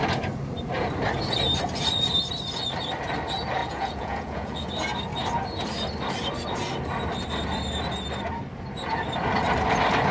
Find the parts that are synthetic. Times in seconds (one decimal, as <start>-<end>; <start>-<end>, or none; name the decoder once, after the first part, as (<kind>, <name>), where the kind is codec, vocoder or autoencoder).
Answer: 3.6-4.7 (vocoder, Vocos)